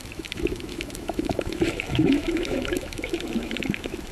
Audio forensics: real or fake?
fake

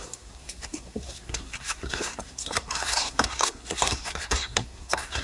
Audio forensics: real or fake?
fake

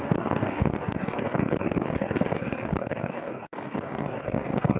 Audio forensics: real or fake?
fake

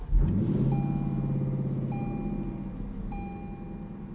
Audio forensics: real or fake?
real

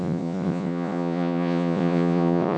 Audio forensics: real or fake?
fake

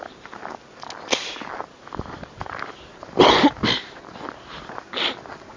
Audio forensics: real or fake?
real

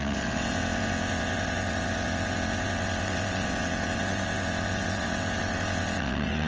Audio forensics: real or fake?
fake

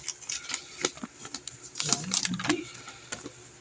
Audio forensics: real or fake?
real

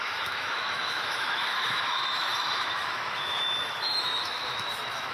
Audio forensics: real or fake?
fake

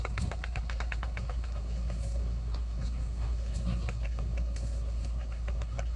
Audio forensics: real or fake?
fake